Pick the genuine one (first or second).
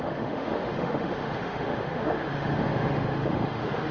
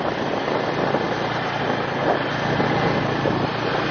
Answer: second